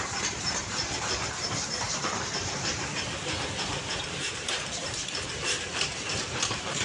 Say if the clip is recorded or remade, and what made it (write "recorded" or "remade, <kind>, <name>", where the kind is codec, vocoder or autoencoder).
remade, vocoder, BigVGAN v2